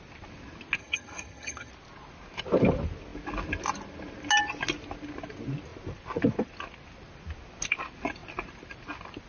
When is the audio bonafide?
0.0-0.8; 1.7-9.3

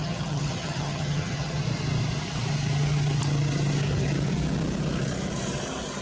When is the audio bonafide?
1.6-6.0

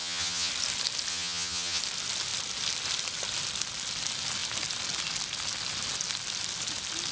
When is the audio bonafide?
0.5-1.1; 1.8-7.1

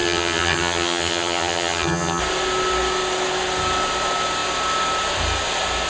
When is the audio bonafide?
2.2-5.9

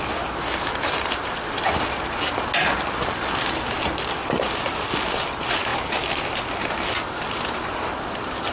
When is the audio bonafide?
0.0-8.5

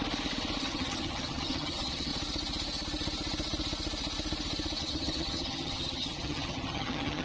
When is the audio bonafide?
0.0-0.6; 2.1-4.8

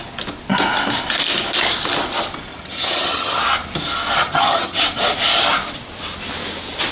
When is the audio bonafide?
0.0-2.5; 3.4-4.2; 4.8-6.9